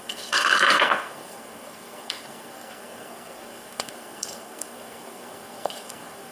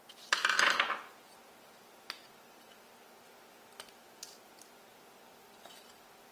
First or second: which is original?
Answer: second